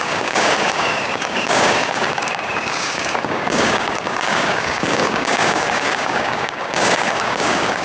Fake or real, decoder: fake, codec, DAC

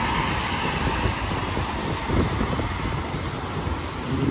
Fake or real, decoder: real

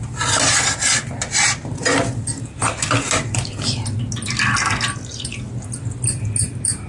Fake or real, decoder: real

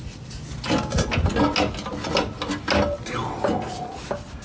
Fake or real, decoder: real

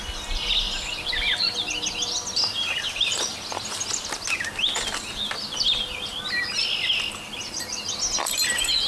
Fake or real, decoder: real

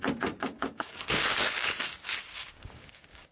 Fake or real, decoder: fake, codec, DAC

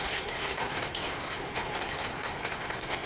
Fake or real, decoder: fake, codec, SNAC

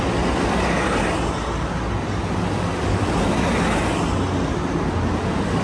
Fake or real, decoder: real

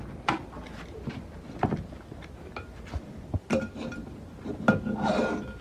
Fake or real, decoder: real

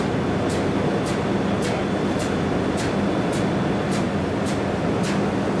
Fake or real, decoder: real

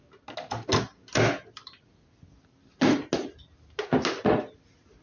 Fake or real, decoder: real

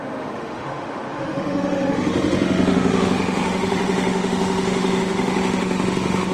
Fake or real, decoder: fake, autoencoder, DAC-VAE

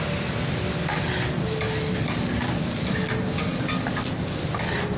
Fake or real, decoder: real